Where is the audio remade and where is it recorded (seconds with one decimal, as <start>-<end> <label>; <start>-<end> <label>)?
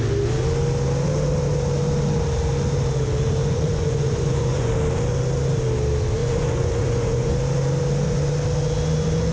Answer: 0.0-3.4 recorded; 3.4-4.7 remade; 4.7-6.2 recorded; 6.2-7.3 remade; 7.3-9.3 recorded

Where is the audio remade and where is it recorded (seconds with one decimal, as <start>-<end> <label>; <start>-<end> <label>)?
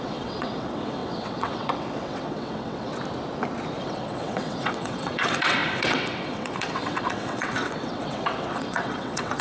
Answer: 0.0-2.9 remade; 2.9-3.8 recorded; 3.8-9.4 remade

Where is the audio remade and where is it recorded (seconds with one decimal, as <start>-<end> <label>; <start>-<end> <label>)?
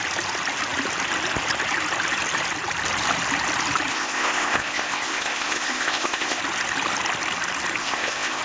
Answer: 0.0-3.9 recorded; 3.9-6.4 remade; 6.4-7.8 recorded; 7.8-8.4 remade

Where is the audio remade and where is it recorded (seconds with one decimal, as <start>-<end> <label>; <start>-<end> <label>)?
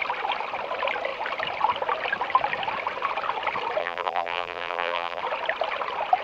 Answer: 0.0-3.8 recorded; 3.8-5.2 remade; 5.2-6.2 recorded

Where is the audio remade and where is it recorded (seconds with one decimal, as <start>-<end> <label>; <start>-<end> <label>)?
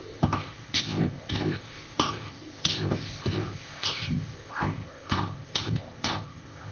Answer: 0.0-6.7 remade